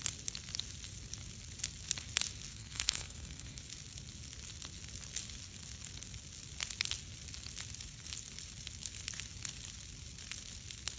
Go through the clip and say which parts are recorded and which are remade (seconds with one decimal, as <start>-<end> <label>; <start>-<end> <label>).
0.0-2.5 recorded; 2.5-3.6 remade; 3.6-11.0 recorded